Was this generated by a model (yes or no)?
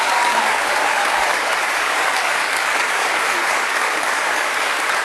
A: yes